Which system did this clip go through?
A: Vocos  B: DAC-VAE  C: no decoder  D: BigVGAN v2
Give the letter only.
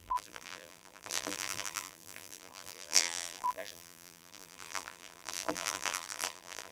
D